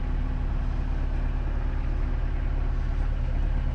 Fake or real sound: real